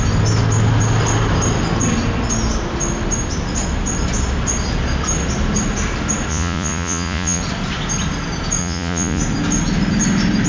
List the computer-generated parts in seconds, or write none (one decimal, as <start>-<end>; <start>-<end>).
6.3-7.4; 8.6-9.2